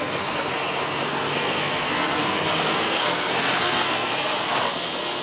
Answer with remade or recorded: remade